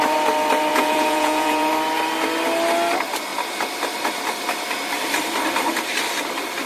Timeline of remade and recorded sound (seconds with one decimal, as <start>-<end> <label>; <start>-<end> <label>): 0.0-0.7 recorded; 0.7-1.7 remade; 1.7-6.7 recorded